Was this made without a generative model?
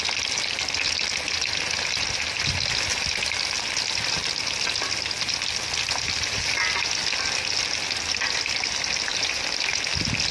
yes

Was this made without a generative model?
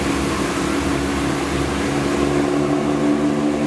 yes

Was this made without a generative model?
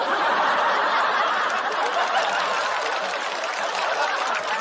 no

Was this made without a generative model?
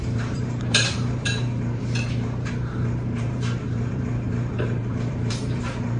no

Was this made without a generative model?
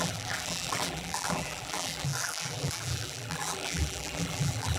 no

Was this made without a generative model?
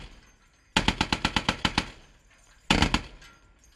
yes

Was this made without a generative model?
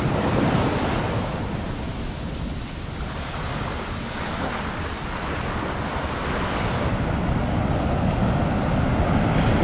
yes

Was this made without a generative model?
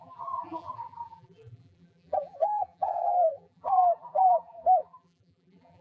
no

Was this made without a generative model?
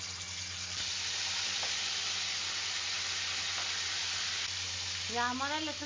yes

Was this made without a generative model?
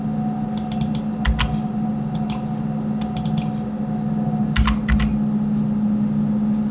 yes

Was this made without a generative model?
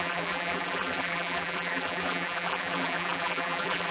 no